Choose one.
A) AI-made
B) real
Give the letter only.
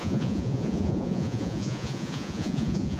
A